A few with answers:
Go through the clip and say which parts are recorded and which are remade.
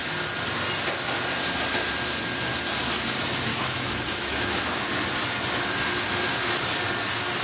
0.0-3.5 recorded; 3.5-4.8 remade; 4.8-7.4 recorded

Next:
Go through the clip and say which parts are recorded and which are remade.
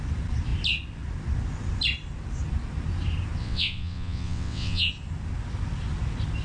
0.0-3.4 recorded; 3.4-4.9 remade; 4.9-6.4 recorded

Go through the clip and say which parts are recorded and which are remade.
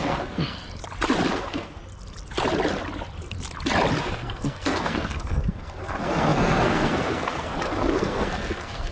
0.0-0.6 remade; 0.6-1.3 recorded; 1.3-1.8 remade; 1.8-4.0 recorded; 4.0-8.9 remade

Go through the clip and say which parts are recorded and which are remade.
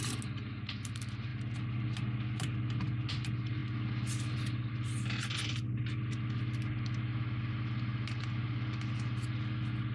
0.0-5.3 recorded; 5.3-5.8 remade; 5.8-9.9 recorded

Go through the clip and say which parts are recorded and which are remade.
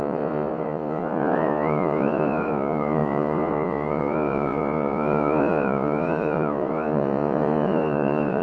0.0-8.4 remade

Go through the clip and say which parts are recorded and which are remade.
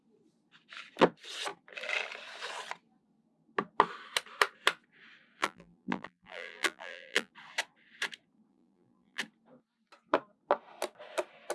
0.0-5.4 recorded; 5.4-7.3 remade; 7.3-8.5 recorded; 8.5-9.2 remade; 9.2-11.5 recorded